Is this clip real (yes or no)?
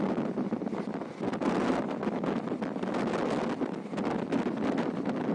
yes